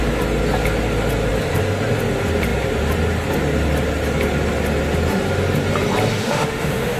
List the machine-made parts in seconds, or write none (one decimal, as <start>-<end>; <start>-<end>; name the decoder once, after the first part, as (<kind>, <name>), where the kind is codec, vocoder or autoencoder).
6.1-7.0 (autoencoder, DAC-VAE)